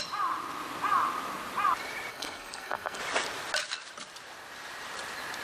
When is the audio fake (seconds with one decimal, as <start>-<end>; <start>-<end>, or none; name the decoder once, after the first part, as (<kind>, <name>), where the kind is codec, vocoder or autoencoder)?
2.1-3.0 (codec, SNAC)